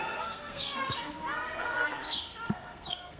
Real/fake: fake